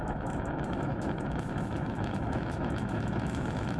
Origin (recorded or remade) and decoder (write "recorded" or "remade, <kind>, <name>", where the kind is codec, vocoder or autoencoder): remade, autoencoder, DAC-VAE